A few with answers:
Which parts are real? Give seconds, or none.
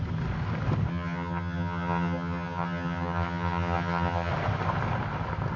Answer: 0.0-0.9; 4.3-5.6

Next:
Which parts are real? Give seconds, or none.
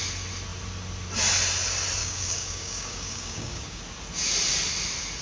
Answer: 0.0-2.0; 3.8-5.2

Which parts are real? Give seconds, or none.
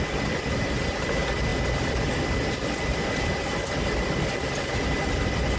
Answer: 0.0-5.6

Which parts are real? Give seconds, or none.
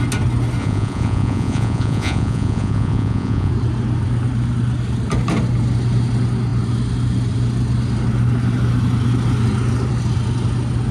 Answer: 0.0-0.6; 3.5-10.9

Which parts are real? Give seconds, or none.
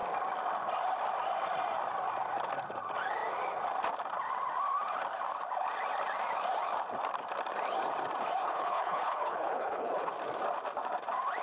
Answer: 0.0-8.4; 10.1-11.4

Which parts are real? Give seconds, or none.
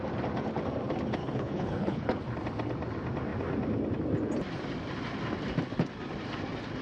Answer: 0.0-1.2; 2.2-6.8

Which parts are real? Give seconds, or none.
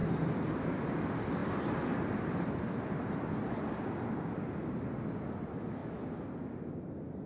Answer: 0.0-1.4; 4.8-7.3